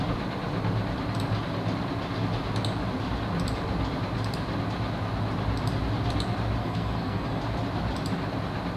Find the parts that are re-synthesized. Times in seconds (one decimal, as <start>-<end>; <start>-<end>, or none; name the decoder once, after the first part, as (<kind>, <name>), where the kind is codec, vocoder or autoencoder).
6.6-7.4 (codec, SNAC)

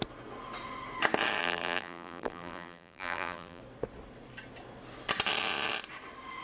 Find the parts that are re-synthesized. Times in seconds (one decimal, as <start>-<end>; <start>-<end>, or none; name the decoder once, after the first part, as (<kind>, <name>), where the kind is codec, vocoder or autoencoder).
1.4-3.6 (vocoder, BigVGAN v2)

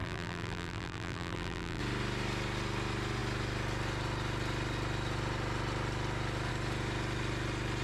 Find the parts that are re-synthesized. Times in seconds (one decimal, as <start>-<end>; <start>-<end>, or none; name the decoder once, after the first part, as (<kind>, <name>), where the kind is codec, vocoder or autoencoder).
0.0-1.8 (vocoder, BigVGAN v2)

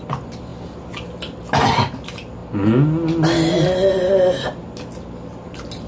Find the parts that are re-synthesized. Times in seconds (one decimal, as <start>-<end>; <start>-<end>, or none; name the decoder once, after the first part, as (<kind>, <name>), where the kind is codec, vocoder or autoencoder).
none

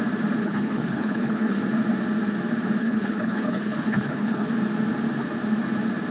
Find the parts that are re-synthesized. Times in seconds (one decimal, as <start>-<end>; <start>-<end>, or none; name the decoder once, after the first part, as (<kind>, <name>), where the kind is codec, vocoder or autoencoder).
0.4-1.6 (codec, HILCodec); 2.8-4.5

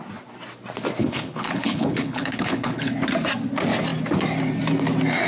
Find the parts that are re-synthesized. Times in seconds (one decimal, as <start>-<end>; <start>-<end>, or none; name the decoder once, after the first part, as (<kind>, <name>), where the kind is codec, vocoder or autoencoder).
1.0-2.9 (codec, HILCodec)

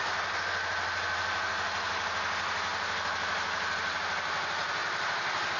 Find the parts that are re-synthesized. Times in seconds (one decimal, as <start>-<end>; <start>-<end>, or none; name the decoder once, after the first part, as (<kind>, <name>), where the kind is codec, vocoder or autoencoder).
none

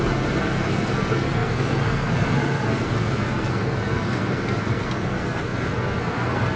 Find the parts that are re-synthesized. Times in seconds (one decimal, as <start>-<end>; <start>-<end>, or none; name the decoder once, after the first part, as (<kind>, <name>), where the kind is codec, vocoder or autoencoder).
0.0-6.6 (codec, SNAC)